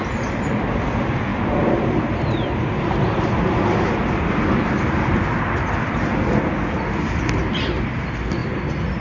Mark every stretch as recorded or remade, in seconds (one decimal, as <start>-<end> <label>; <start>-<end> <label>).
0.0-9.0 recorded